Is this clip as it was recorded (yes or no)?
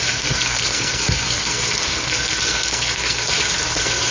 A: no